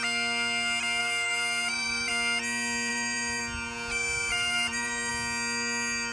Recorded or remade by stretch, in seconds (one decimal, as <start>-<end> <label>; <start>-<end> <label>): 0.0-1.0 recorded; 1.0-2.1 remade; 2.1-2.9 recorded; 2.9-3.4 remade; 3.4-4.3 recorded; 4.3-5.1 remade; 5.1-6.1 recorded